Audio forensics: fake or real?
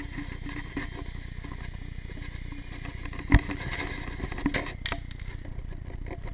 real